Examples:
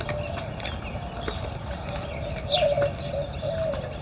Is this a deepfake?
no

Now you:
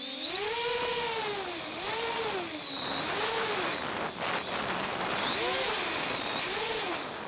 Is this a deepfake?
no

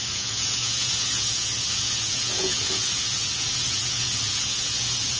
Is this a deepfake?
yes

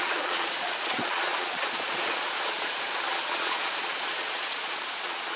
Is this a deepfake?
yes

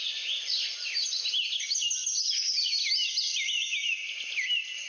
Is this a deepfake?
no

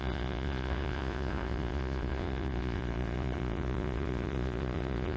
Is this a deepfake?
yes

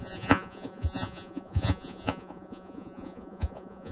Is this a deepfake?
yes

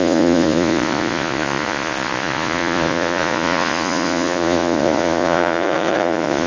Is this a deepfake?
yes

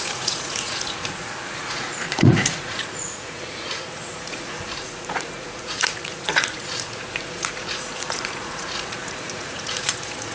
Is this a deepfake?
yes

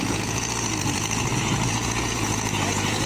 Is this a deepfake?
yes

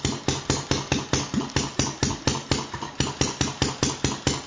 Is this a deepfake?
no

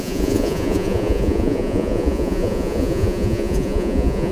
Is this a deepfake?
yes